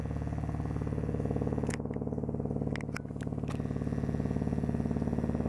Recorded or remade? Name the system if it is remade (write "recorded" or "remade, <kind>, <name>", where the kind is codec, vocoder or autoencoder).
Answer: recorded